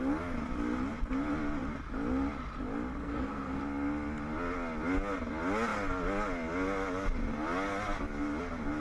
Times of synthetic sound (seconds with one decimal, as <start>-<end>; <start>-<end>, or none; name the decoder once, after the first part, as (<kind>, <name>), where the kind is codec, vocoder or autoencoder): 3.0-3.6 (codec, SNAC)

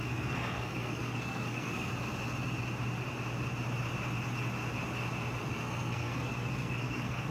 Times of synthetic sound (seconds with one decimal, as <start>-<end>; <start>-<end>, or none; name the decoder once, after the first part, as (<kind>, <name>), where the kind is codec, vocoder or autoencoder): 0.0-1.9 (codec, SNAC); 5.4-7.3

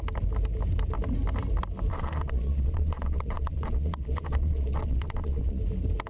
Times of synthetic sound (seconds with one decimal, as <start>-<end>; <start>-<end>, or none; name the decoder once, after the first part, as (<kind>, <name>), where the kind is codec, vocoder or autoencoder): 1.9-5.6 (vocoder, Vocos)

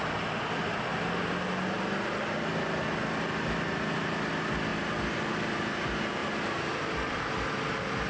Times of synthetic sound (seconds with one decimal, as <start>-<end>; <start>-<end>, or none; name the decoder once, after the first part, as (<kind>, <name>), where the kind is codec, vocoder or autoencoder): none

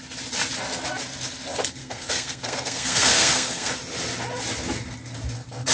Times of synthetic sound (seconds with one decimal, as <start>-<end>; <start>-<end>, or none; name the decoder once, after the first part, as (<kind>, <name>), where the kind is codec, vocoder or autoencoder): 1.8-3.7 (codec, SNAC)

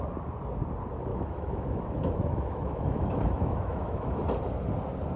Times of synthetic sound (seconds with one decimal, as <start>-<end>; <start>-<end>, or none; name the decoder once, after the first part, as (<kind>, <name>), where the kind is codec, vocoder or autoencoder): 1.1-4.2 (autoencoder, DAC-VAE)

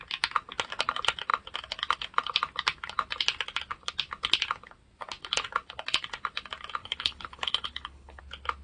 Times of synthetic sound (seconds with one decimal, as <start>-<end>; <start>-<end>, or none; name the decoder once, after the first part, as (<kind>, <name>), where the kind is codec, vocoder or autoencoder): 6.8-8.2 (codec, HILCodec)

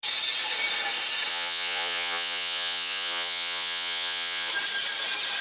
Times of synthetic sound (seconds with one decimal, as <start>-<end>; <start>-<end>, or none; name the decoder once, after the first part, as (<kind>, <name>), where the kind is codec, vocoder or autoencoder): 1.3-4.5 (vocoder, Vocos)